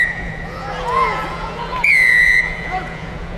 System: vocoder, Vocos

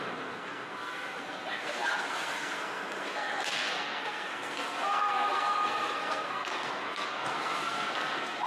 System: codec, SNAC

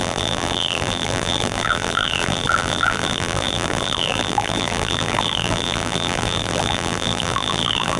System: vocoder, BigVGAN v2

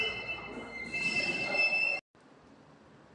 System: none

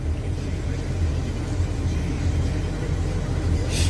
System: none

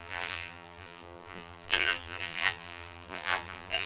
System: vocoder, BigVGAN v2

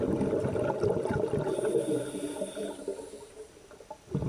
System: none